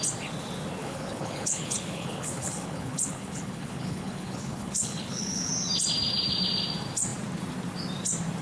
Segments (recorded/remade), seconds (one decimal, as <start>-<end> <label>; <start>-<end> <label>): 0.0-0.8 recorded; 0.8-5.5 remade; 5.5-8.4 recorded